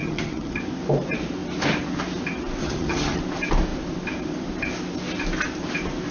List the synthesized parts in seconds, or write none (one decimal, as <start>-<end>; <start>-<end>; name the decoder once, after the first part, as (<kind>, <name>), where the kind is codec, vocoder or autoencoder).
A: 0.0-0.6 (vocoder, HiFi-GAN); 2.6-3.2